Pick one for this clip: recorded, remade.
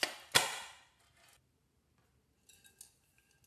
recorded